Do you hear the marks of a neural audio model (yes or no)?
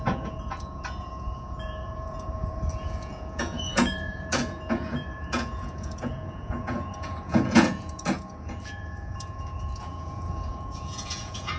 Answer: yes